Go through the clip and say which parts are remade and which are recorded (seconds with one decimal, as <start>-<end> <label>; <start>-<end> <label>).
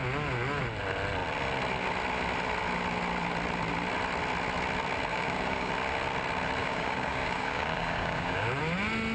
0.0-5.1 recorded; 5.1-5.7 remade; 5.7-6.6 recorded; 6.6-8.6 remade; 8.6-9.1 recorded